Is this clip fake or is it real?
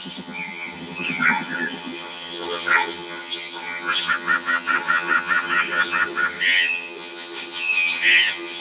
fake